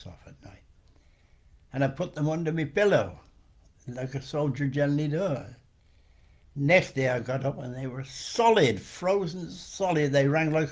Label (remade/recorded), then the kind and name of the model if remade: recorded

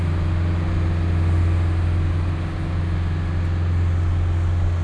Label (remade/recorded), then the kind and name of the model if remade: recorded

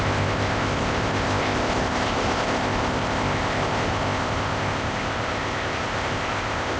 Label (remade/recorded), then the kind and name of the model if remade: remade, codec, ZipCodec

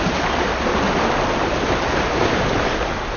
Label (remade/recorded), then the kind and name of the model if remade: recorded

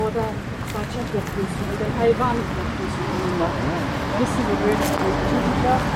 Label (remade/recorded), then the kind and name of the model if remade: recorded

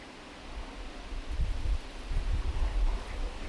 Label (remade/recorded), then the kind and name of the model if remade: recorded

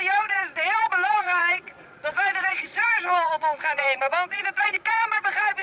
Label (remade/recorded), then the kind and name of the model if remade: remade, vocoder, Vocos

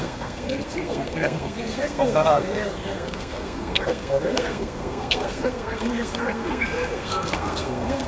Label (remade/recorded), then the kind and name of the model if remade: remade, codec, SNAC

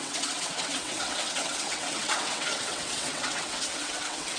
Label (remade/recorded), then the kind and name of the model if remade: remade, vocoder, WaveNeXt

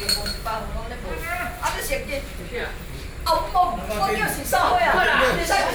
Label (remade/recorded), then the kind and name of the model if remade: recorded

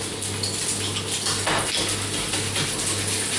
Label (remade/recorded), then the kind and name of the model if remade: recorded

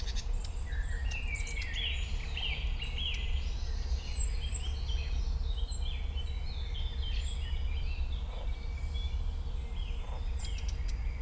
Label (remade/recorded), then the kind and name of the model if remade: recorded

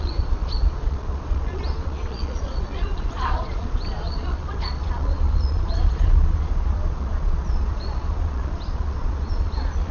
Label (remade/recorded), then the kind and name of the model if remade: remade, vocoder, Vocos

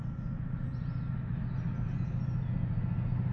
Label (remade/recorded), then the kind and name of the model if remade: recorded